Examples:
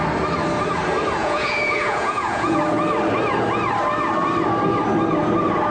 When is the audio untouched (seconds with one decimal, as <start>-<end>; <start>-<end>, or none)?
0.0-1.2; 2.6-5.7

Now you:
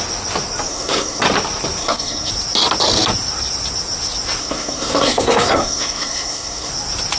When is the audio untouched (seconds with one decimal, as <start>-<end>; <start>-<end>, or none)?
0.0-0.7; 1.2-1.8; 2.3-4.4; 6.7-7.2

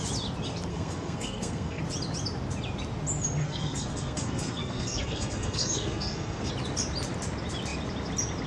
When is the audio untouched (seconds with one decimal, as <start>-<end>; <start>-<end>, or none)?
0.0-0.7; 1.8-3.4; 6.5-8.5